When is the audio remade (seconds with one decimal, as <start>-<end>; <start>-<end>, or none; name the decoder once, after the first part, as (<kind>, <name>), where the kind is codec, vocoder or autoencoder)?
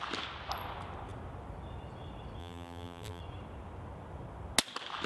2.4-3.2 (vocoder, BigVGAN v2)